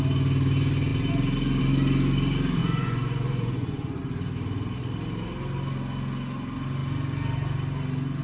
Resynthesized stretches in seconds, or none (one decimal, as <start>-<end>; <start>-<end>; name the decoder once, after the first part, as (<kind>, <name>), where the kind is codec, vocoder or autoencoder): 2.6-4.0 (vocoder, Vocos)